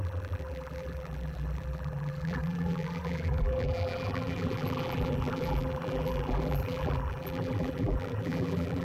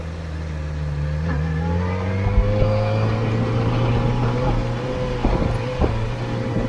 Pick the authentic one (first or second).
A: second